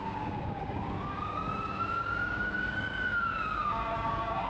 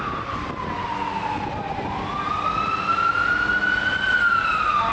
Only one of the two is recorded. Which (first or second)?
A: second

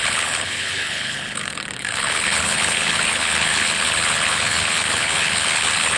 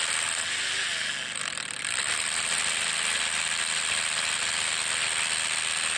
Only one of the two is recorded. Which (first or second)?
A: second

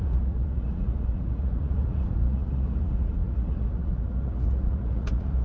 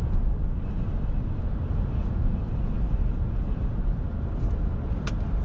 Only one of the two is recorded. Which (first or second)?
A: second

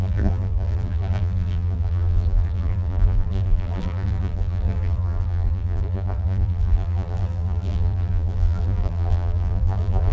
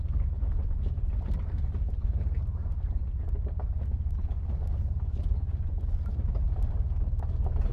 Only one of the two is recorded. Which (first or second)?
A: second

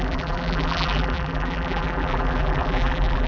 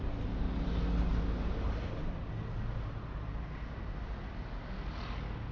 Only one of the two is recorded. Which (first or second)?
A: second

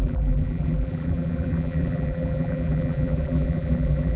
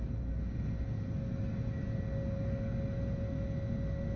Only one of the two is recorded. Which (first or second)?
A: second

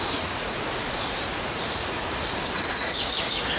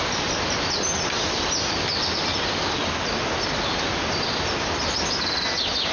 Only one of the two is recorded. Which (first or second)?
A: second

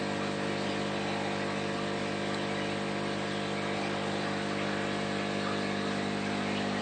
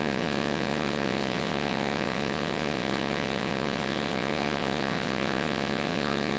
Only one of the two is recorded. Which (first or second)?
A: first